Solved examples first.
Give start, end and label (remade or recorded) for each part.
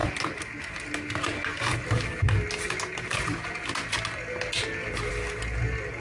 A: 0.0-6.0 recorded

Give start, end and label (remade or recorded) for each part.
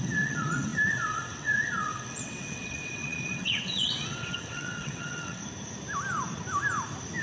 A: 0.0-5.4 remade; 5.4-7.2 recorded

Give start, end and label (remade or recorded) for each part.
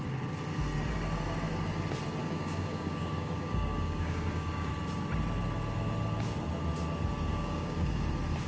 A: 0.0-2.2 recorded; 2.2-4.7 remade; 4.7-7.3 recorded; 7.3-8.1 remade; 8.1-8.5 recorded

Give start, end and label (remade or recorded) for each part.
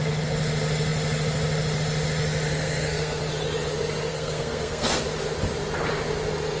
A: 0.0-2.5 recorded; 2.5-3.2 remade; 3.2-4.1 recorded; 4.1-5.0 remade; 5.0-6.6 recorded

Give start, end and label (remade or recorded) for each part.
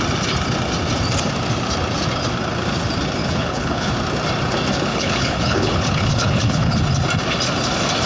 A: 0.0-3.2 recorded; 3.2-3.9 remade; 3.9-4.9 recorded; 4.9-6.8 remade; 6.8-8.1 recorded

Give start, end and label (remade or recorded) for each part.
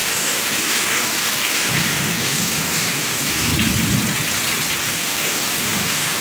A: 0.0-3.5 remade; 3.5-4.8 recorded; 4.8-6.2 remade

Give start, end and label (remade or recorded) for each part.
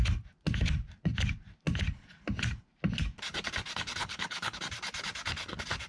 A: 0.0-4.0 recorded; 4.0-4.6 remade; 4.6-5.9 recorded